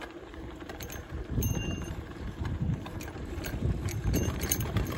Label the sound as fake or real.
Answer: fake